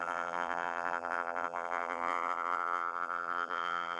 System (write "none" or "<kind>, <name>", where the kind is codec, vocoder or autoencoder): vocoder, BigVGAN v2